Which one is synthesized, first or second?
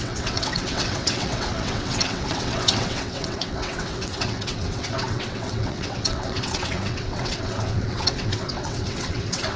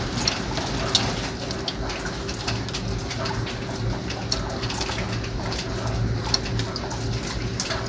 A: first